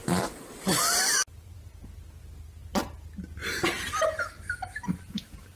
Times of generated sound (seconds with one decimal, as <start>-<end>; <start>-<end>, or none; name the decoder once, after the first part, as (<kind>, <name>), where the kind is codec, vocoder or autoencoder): 0.0-0.8 (vocoder, BigVGAN v2)